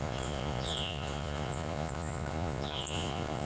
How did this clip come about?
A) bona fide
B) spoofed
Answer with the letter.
B